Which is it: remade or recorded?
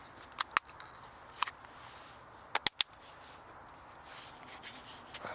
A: recorded